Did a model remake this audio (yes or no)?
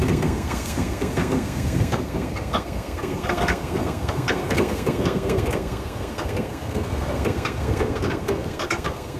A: yes